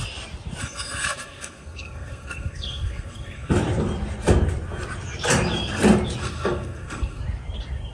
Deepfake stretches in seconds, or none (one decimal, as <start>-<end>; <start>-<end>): 0.6-3.5; 6.2-7.2